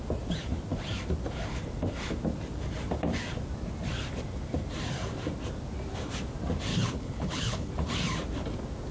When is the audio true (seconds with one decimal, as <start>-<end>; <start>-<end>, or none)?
0.0-6.7; 7.7-8.9